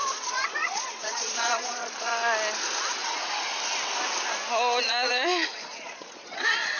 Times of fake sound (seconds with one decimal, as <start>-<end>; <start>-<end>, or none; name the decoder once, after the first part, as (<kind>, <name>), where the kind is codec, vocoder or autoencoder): 0.0-2.1 (vocoder, Vocos); 4.8-6.8